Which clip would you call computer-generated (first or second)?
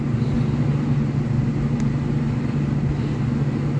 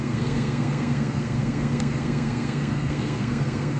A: second